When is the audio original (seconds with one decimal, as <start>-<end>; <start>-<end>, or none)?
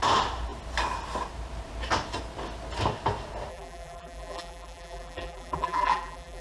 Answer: 0.0-3.5